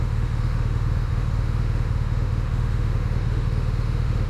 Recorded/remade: remade